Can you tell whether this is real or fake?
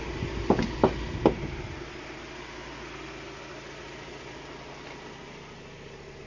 real